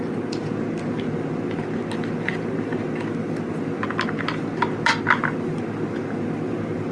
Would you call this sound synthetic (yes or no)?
no